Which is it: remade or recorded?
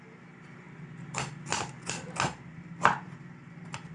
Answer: recorded